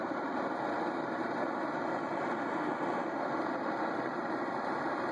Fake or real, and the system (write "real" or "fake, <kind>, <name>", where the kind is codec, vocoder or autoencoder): fake, vocoder, BigVGAN v2